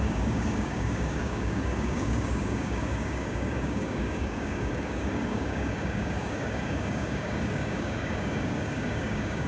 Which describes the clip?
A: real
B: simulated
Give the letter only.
B